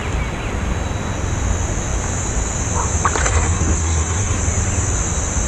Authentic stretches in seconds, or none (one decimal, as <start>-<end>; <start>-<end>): 0.0-3.2; 4.4-5.5